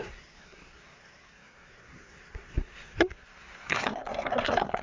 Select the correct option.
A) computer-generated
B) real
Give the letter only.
A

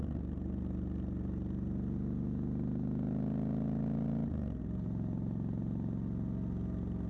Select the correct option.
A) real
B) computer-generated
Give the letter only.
A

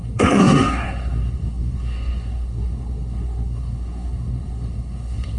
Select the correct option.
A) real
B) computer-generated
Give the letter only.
B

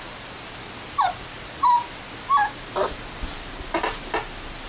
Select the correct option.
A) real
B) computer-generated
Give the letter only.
A